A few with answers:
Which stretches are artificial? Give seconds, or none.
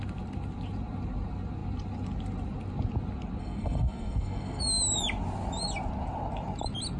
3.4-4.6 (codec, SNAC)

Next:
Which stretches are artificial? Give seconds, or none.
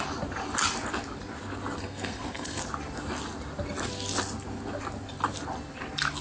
1.8-2.6 (codec, SNAC)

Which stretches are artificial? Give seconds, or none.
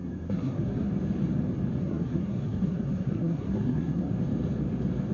0.0-0.9 (codec, SNAC); 1.8-4.1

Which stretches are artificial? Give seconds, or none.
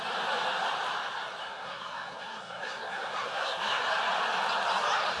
1.4-3.8 (codec, SNAC)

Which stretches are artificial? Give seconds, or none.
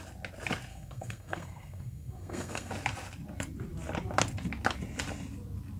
0.7-2.7 (codec, SNAC)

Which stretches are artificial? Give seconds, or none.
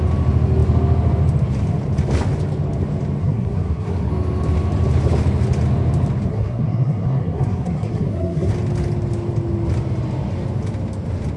3.2-4.1 (codec, SNAC); 6.3-8.5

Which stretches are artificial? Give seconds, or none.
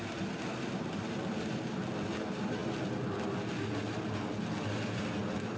none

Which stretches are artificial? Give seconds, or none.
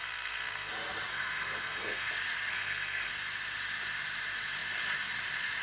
0.0-0.7 (codec, SNAC); 1.1-2.1; 2.5-3.1